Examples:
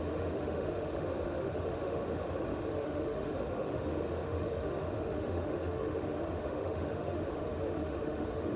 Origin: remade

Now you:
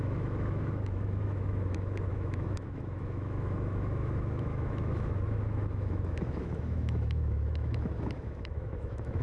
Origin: remade